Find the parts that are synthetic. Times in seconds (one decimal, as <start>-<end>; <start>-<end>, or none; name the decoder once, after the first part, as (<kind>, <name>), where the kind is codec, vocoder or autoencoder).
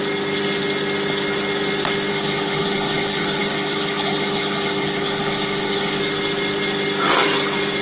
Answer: 2.1-6.0 (codec, HILCodec)